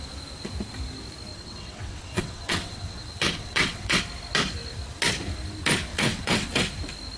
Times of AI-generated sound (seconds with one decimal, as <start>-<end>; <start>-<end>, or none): 1.3-4.0; 5.9-6.6